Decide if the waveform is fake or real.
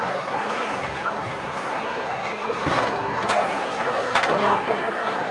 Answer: fake